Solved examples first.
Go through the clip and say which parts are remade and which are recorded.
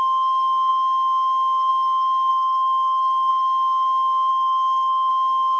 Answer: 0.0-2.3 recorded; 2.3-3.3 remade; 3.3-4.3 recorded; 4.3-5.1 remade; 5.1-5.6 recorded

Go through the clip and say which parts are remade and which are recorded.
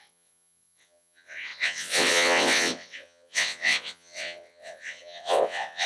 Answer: 0.0-5.9 remade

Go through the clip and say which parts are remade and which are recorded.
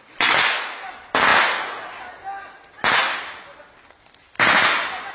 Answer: 0.0-5.1 recorded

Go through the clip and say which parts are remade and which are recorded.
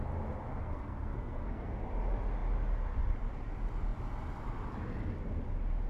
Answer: 0.0-0.6 recorded; 0.6-1.8 remade; 1.8-5.9 recorded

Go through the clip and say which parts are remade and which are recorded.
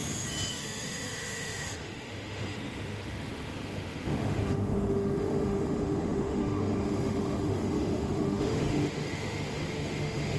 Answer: 0.0-0.5 recorded; 0.5-10.4 remade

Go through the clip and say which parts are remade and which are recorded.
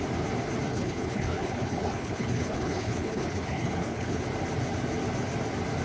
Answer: 0.0-0.7 recorded; 0.7-4.2 remade; 4.2-5.8 recorded